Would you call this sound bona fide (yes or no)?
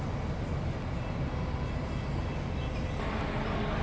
yes